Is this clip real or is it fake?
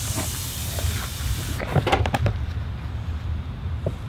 fake